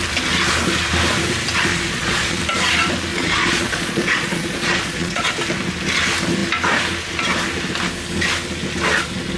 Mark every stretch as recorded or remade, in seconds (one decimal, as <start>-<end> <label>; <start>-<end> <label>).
0.0-1.7 recorded; 1.7-2.4 remade; 2.4-3.1 recorded; 3.1-5.3 remade; 5.3-9.4 recorded